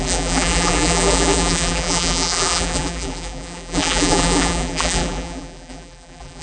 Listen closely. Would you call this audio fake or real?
fake